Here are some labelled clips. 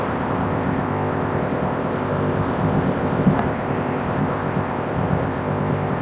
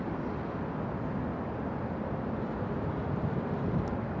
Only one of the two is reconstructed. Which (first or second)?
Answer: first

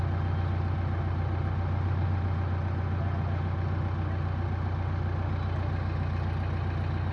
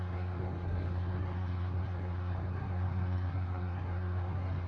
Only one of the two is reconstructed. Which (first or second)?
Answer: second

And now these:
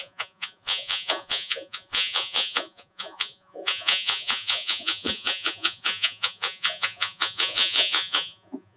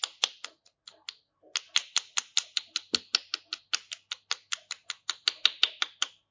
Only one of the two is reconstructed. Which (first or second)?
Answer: first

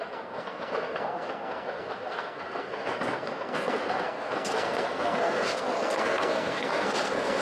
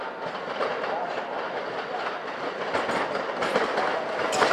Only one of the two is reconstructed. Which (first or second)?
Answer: first